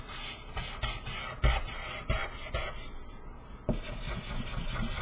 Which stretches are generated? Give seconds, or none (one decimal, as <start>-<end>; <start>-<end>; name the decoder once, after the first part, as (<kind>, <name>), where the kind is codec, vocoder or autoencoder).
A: none